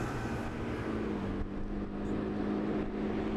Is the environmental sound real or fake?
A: real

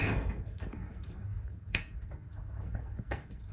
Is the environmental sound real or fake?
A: fake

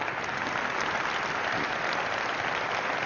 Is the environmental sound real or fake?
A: real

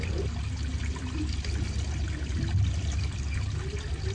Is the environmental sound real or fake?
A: real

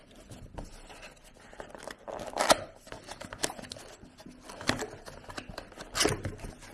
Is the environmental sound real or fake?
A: real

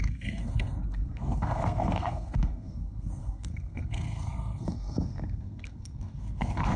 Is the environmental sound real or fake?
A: fake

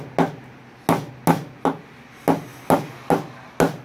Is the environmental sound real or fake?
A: real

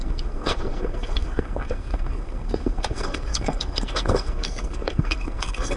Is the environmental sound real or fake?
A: fake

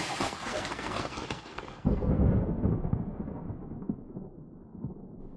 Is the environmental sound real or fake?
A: fake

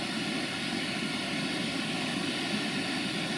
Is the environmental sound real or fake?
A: real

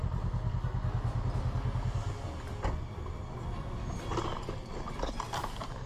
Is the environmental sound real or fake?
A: real